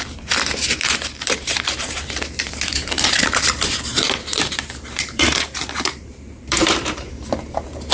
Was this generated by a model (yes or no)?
yes